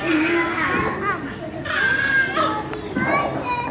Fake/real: real